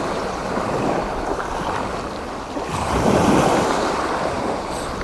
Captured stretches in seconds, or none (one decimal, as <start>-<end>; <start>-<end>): 0.4-3.4